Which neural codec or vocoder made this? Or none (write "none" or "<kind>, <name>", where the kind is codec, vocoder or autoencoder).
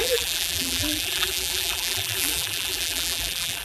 vocoder, BigVGAN v2